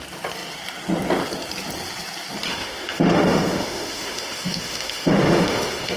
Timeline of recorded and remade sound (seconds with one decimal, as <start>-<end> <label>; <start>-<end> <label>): 0.0-2.5 recorded; 2.5-6.0 remade